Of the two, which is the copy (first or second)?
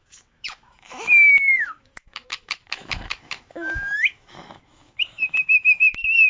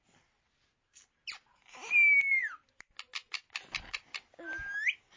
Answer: first